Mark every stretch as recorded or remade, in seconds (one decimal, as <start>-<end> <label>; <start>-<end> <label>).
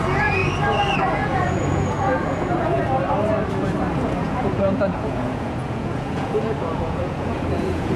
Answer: 0.0-0.4 remade; 0.4-1.1 recorded; 1.1-2.8 remade; 2.8-4.1 recorded; 4.1-8.0 remade